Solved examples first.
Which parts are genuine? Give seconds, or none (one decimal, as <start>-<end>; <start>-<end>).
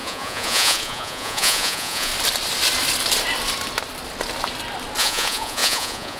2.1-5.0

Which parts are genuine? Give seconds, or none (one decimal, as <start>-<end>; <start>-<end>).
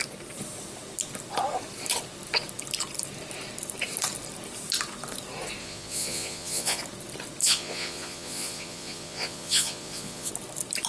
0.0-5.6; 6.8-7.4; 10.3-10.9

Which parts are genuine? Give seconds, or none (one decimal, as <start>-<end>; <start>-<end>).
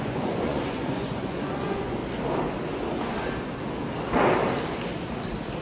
2.0-5.6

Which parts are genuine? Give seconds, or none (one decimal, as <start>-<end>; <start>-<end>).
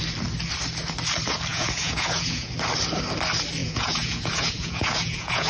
0.0-1.5; 2.5-3.6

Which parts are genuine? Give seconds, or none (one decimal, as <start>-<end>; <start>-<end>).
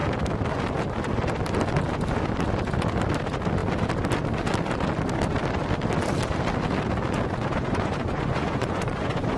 0.0-7.5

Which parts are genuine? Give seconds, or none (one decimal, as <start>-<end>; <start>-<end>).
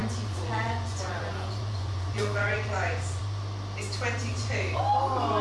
3.2-4.3; 4.8-5.4